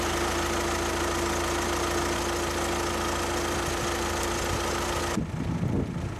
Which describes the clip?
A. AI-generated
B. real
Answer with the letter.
B